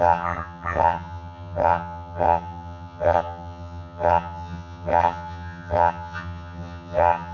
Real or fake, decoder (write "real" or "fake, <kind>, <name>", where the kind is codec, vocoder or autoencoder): fake, vocoder, HiFi-GAN